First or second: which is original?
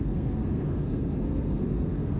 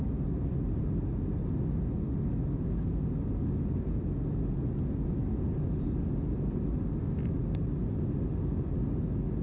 second